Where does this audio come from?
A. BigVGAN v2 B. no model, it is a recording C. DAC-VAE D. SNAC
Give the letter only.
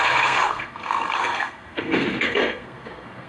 D